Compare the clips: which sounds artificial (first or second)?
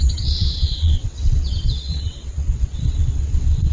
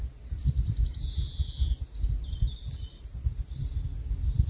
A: first